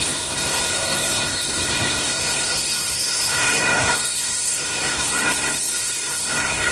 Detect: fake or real fake